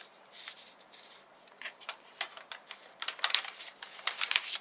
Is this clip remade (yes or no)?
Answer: yes